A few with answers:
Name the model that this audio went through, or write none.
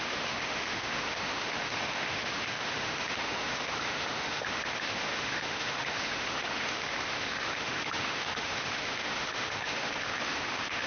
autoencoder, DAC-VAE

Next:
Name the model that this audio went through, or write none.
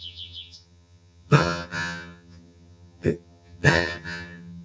vocoder, HiFi-GAN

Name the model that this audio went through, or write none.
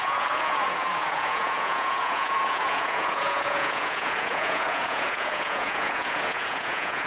vocoder, Vocos